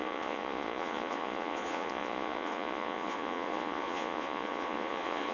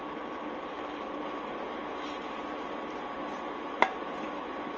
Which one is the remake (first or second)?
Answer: first